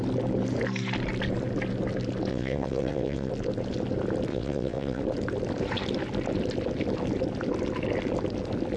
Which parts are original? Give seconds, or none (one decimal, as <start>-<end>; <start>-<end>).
0.0-2.3; 3.3-4.3; 5.0-8.8